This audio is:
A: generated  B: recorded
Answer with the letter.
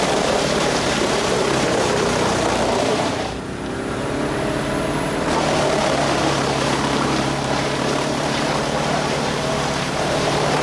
A